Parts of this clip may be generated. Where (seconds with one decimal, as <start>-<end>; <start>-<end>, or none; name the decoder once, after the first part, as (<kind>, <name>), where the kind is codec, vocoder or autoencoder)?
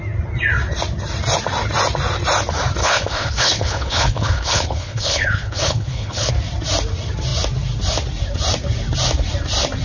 2.8-6.3 (codec, HILCodec)